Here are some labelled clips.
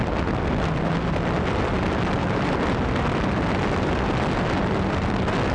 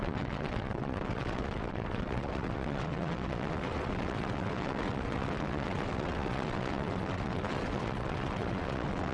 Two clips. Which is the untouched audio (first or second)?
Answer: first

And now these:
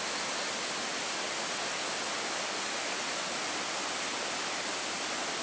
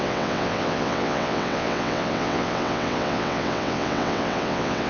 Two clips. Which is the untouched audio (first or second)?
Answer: first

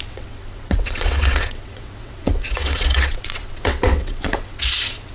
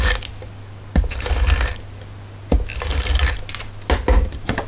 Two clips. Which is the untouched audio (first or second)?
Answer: second